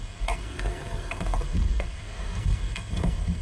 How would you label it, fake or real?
fake